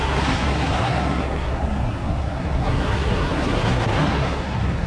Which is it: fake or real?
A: fake